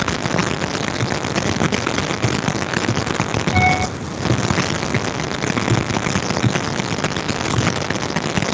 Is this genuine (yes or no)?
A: yes